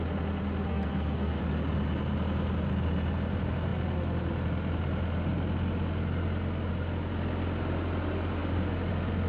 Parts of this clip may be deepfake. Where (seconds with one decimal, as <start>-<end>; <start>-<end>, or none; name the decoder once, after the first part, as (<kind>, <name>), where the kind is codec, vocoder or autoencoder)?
0.7-1.4 (codec, SNAC)